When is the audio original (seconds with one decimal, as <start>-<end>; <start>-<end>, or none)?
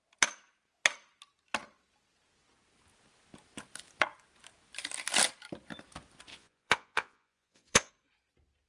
0.0-6.3; 7.9-8.7